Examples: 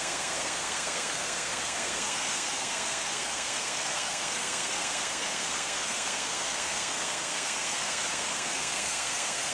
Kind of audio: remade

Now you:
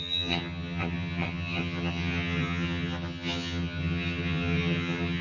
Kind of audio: remade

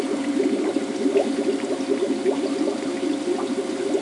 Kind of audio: recorded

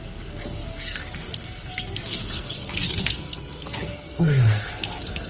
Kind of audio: remade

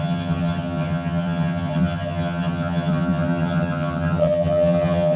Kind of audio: remade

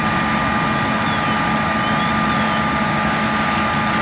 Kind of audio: recorded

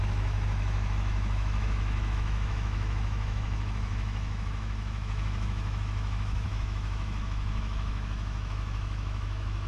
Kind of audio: remade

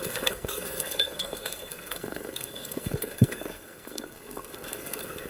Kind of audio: remade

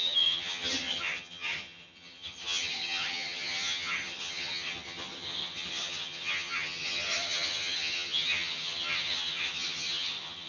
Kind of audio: remade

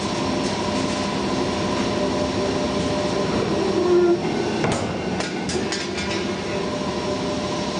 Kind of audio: recorded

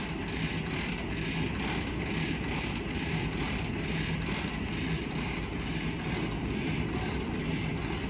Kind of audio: recorded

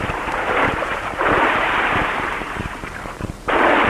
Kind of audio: remade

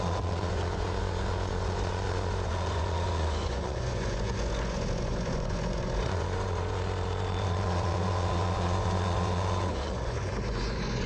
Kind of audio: remade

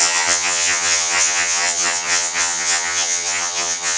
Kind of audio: remade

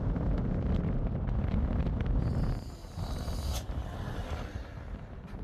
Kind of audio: recorded